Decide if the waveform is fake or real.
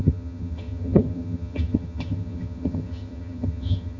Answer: fake